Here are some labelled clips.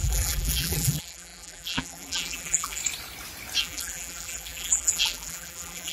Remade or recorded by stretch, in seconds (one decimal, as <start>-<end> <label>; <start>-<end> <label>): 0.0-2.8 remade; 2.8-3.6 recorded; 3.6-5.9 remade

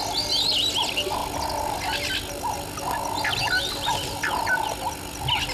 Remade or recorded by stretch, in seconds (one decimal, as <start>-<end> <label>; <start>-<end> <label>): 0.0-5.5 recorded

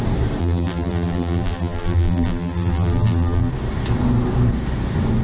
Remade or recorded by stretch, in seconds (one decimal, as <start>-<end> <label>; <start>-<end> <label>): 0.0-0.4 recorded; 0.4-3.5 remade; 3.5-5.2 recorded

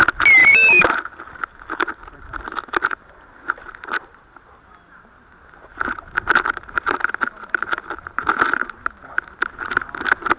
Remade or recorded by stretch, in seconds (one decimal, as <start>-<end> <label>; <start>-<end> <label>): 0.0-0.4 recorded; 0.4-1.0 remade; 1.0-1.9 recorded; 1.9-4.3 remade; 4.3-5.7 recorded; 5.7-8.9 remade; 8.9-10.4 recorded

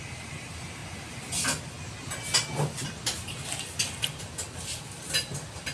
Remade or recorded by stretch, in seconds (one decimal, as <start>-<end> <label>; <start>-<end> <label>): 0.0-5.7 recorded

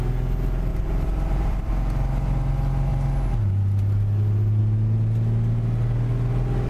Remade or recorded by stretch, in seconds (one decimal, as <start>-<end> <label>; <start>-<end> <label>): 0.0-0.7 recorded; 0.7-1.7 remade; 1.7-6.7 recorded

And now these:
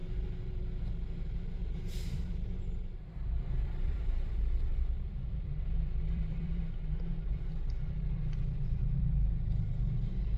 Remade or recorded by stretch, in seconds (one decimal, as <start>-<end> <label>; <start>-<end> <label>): 0.0-4.7 recorded; 4.7-9.1 remade; 9.1-10.4 recorded

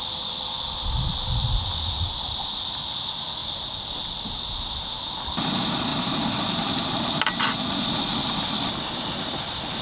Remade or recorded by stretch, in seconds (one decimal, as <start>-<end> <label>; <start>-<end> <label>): 0.0-3.4 recorded; 3.4-4.3 remade; 4.3-5.9 recorded; 5.9-8.7 remade; 8.7-9.8 recorded